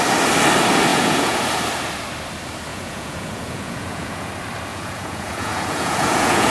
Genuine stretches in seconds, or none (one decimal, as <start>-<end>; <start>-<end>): 0.0-0.9; 1.4-2.7; 4.3-4.7